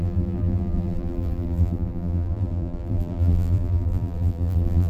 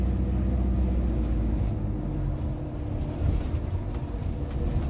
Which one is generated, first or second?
first